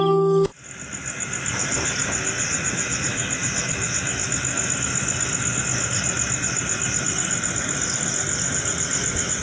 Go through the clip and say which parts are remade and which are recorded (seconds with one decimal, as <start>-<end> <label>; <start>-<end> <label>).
0.0-9.4 recorded